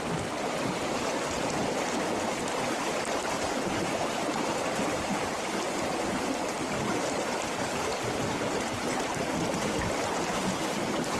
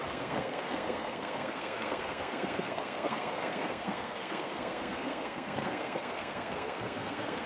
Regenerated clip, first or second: second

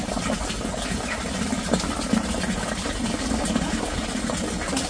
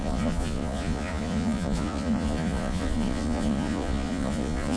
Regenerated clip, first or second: second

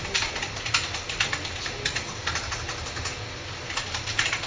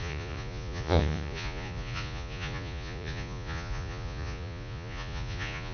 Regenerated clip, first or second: second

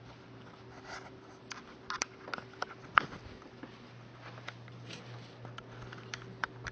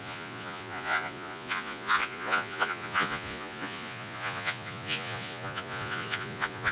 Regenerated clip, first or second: second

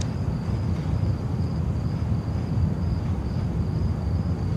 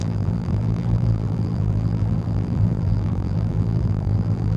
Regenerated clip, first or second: second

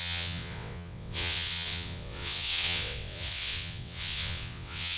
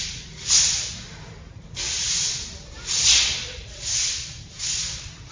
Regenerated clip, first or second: first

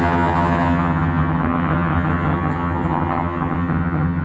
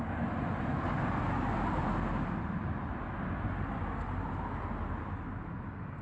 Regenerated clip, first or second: first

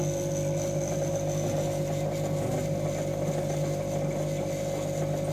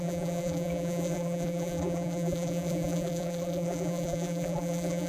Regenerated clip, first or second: second